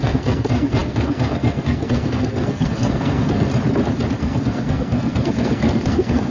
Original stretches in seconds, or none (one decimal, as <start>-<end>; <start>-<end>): 3.5-4.2